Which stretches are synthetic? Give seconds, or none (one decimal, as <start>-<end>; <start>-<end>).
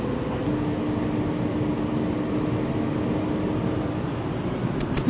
none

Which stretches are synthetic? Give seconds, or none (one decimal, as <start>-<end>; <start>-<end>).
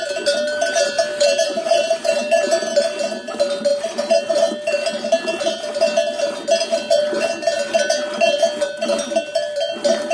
1.1-2.2; 3.7-4.3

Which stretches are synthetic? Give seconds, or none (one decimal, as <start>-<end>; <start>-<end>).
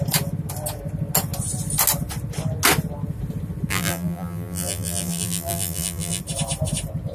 3.7-6.2